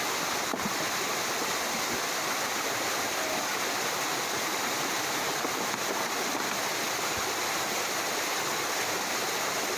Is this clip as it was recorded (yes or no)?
yes